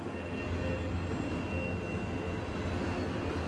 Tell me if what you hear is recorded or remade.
recorded